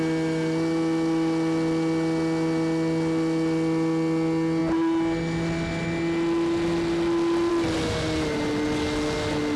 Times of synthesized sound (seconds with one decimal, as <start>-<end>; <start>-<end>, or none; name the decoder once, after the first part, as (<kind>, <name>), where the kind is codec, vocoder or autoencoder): none